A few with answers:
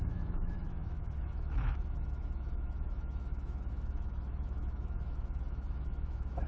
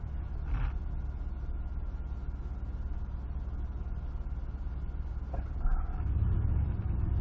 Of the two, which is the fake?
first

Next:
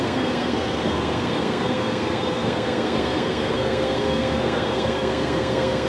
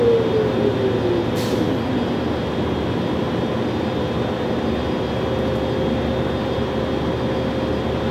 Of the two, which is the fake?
first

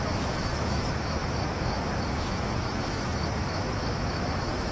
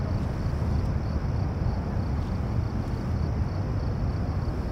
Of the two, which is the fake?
first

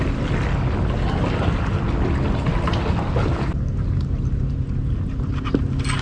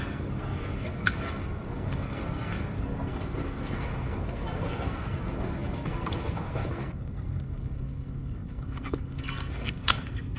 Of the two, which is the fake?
second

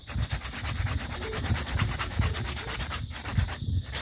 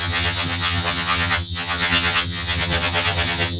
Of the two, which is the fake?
second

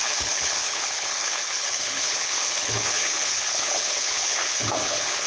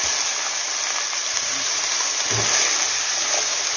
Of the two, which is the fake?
first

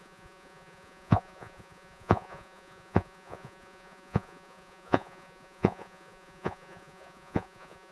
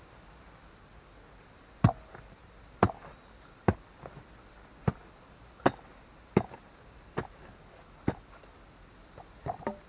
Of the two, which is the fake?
first